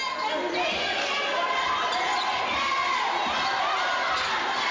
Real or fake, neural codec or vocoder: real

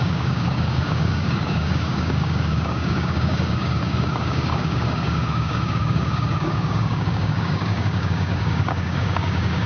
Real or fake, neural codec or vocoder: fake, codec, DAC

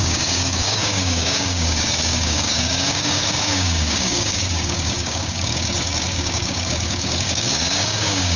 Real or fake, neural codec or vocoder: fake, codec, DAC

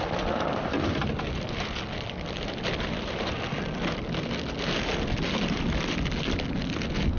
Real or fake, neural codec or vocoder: real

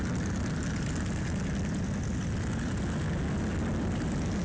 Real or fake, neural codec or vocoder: real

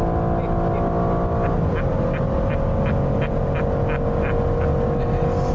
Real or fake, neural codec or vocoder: real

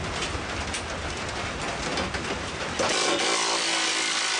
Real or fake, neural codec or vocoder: real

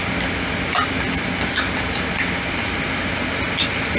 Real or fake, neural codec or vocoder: real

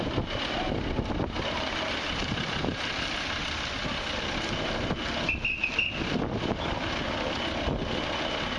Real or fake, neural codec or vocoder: real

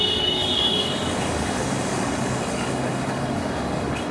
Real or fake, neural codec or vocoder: fake, codec, DAC